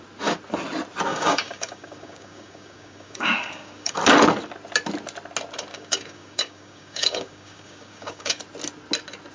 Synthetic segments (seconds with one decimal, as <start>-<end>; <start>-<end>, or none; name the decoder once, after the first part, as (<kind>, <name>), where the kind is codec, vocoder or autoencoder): 1.1-4.0 (codec, DAC); 5.7-8.4

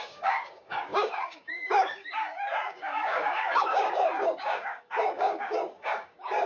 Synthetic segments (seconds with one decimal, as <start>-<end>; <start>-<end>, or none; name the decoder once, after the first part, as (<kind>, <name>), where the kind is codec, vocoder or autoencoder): 0.0-6.5 (codec, DAC)

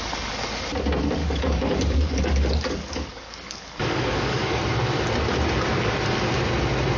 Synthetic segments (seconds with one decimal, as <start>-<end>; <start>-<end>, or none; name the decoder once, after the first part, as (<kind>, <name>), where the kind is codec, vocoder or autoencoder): 1.2-4.6 (codec, DAC)

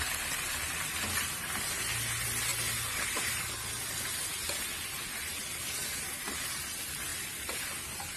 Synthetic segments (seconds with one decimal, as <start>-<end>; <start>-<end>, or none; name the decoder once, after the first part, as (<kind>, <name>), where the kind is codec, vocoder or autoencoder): none